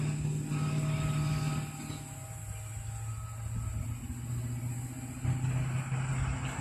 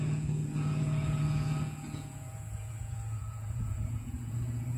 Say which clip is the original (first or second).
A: first